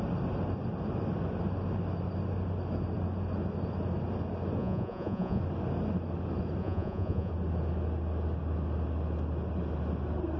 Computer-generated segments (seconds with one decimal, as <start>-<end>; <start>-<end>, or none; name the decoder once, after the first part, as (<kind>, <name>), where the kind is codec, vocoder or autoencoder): 4.6-5.4 (vocoder, Vocos); 6.6-7.3